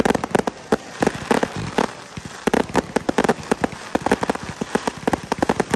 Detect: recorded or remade recorded